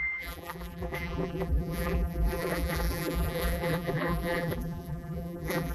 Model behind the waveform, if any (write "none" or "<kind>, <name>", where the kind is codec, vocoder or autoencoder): vocoder, BigVGAN v2